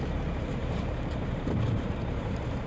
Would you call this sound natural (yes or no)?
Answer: no